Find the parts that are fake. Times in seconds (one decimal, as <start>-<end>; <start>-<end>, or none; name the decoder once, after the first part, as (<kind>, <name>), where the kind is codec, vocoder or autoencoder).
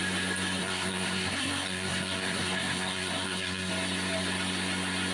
0.6-3.7 (codec, SNAC)